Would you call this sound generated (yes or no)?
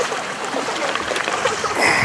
no